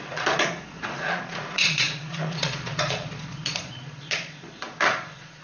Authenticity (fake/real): fake